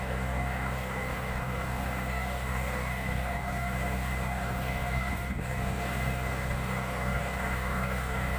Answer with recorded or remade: remade